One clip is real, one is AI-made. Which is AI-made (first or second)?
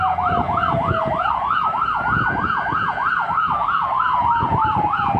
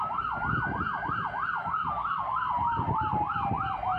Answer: first